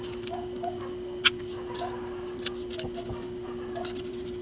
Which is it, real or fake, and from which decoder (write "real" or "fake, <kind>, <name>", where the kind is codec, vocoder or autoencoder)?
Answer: real